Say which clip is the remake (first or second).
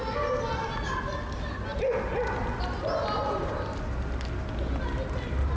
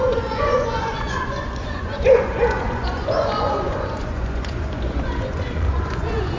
second